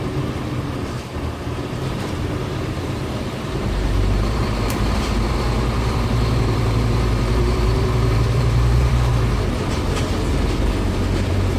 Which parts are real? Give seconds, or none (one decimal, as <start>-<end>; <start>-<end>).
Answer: 9.1-10.8